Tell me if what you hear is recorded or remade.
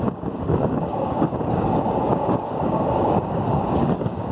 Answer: remade